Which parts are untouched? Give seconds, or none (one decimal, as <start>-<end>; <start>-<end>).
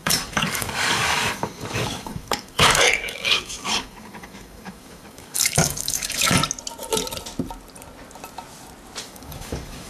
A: 6.4-9.0